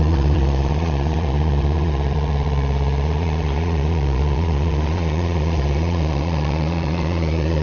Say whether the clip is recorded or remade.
remade